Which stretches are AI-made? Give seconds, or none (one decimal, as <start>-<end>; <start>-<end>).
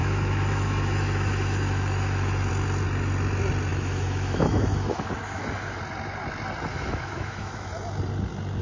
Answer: 0.0-2.5; 3.7-5.8; 6.7-7.7